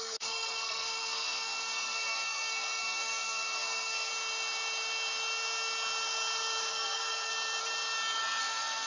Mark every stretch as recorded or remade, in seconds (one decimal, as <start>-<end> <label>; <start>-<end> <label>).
0.0-4.1 remade; 4.1-6.7 recorded; 6.7-7.3 remade; 7.3-8.4 recorded; 8.4-8.9 remade